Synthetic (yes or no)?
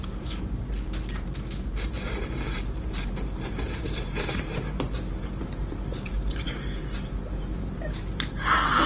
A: yes